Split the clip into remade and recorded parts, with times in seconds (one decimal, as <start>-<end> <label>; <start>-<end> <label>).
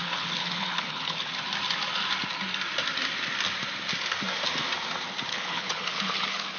0.0-1.3 remade; 1.3-5.3 recorded; 5.3-6.6 remade